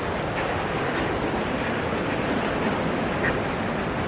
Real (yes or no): yes